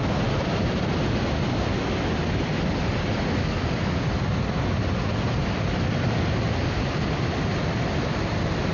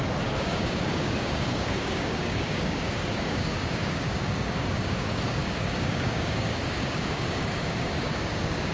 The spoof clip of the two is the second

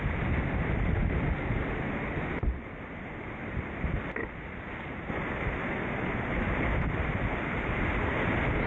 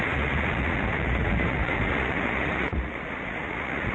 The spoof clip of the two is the second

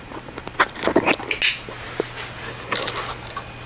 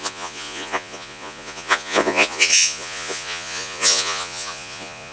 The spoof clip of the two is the second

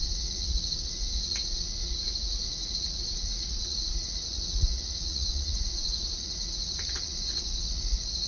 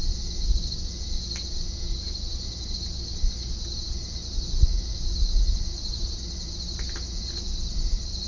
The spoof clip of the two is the first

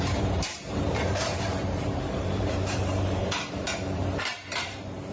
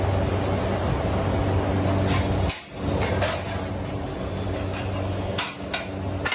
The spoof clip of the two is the first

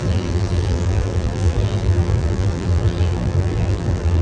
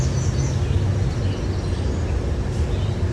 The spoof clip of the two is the first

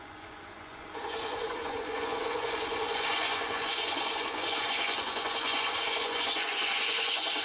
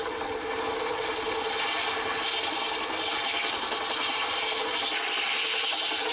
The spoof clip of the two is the first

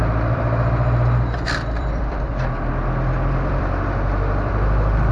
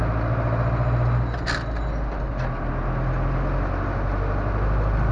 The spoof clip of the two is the first